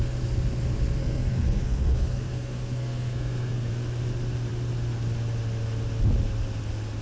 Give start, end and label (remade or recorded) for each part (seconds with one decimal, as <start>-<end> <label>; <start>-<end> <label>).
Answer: 0.0-1.0 recorded; 1.0-3.7 remade; 3.7-7.0 recorded